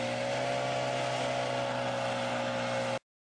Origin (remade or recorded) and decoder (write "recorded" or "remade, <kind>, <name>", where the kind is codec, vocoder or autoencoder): recorded